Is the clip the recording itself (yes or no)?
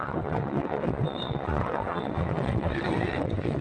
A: no